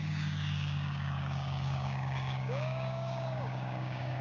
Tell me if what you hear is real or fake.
fake